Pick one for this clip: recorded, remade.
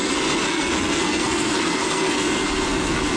remade